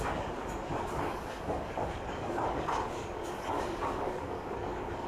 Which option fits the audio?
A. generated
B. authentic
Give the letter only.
A